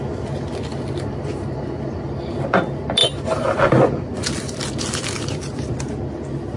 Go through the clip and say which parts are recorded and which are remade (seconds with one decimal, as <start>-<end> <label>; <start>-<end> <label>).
0.0-0.7 recorded; 0.7-2.0 remade; 2.0-3.0 recorded; 3.0-5.8 remade; 5.8-6.6 recorded